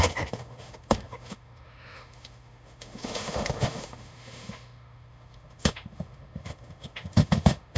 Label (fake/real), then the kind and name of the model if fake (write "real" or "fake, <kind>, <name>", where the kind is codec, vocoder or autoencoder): fake, autoencoder, DAC-VAE